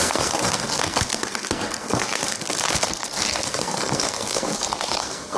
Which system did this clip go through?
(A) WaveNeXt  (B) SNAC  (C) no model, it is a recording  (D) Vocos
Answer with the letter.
B